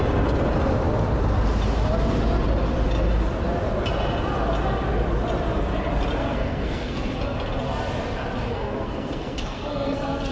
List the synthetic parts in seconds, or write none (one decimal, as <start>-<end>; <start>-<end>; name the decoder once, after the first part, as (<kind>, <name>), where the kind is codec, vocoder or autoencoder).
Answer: 6.2-7.1 (codec, SNAC); 8.5-10.3